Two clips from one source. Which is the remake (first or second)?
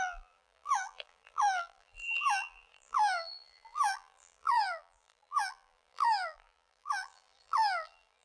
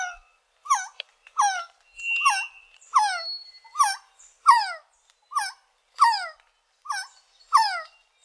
first